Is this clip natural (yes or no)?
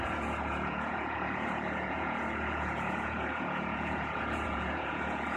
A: no